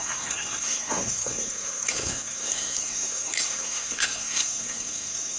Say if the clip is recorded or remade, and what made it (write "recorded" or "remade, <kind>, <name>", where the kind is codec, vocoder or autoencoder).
remade, codec, SNAC